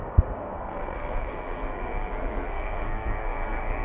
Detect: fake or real fake